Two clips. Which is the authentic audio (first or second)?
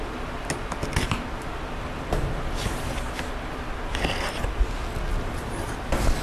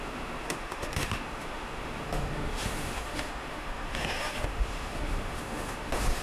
first